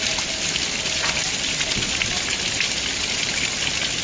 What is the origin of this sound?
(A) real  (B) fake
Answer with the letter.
A